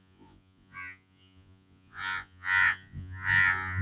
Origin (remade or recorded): remade